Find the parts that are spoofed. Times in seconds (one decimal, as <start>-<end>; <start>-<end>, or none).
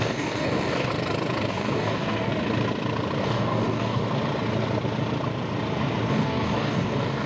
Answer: 0.0-0.9; 1.5-2.3; 3.2-4.0; 6.1-7.3